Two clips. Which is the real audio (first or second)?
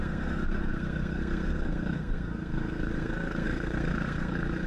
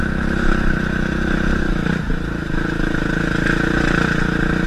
second